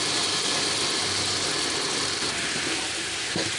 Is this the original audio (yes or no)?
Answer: yes